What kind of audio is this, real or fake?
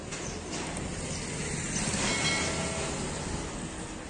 real